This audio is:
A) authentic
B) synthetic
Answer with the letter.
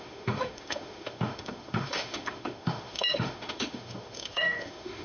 B